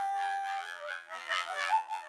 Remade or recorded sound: remade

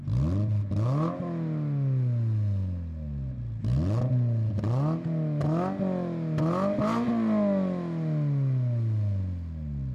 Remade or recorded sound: recorded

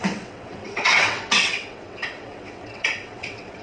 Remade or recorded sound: remade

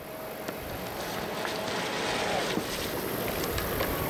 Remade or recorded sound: recorded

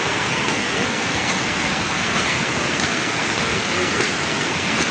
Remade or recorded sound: remade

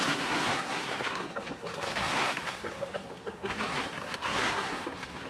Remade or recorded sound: remade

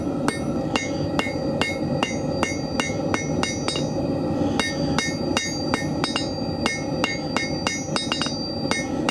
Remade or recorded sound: recorded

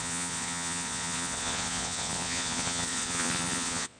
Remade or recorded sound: remade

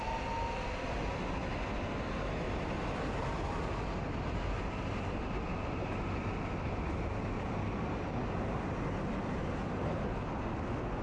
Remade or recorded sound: recorded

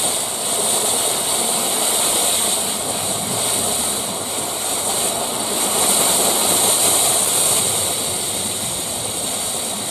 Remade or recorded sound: remade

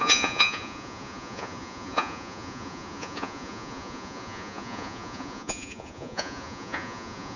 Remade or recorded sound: remade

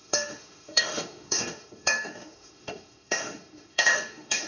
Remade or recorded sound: remade